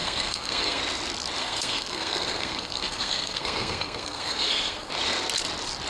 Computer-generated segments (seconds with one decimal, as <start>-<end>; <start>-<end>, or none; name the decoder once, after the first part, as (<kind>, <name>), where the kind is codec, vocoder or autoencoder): 0.0-0.8 (codec, SNAC); 1.4-4.9